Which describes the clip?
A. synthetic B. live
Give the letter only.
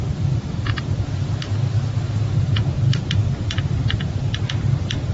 B